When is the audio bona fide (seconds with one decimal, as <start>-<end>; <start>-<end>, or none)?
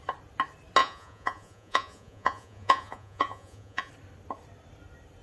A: 0.0-0.8; 3.9-5.2